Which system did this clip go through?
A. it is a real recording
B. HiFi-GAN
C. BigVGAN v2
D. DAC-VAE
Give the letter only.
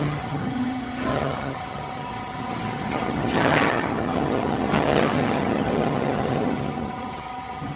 B